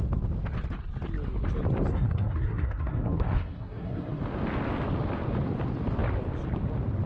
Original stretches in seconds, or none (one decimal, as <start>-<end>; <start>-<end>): 0.0-1.9; 4.2-7.1